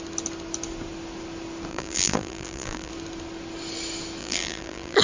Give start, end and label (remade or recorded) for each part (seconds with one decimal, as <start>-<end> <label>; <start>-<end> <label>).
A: 0.0-1.7 recorded; 1.7-2.9 remade; 2.9-4.2 recorded; 4.2-5.0 remade